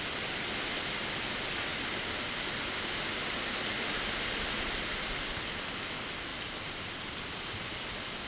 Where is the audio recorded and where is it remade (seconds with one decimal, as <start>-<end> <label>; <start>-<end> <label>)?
0.0-6.3 recorded; 6.3-7.1 remade; 7.1-8.3 recorded